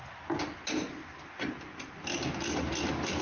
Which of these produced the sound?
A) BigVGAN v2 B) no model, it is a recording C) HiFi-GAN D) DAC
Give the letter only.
B